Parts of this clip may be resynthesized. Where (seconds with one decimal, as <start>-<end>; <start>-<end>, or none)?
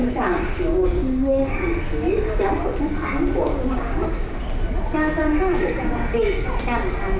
0.0-1.7; 3.5-4.4; 5.2-6.6